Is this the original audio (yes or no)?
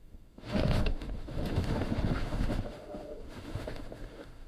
no